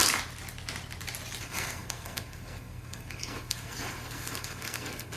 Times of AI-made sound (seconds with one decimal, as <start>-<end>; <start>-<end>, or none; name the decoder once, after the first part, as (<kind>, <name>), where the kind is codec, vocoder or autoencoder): 1.4-5.2 (codec, SNAC)